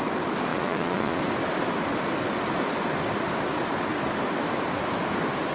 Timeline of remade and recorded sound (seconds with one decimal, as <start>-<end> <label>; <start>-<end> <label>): 0.0-0.5 recorded; 0.5-1.2 remade; 1.2-5.5 recorded